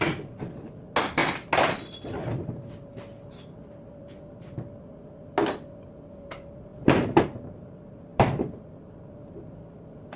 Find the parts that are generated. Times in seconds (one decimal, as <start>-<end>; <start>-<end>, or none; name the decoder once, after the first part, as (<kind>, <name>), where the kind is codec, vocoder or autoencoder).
8.1-8.6 (vocoder, BigVGAN v2)